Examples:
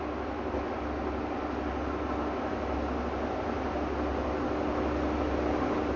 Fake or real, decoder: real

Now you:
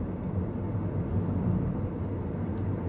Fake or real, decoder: real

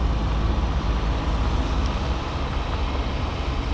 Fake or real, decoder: real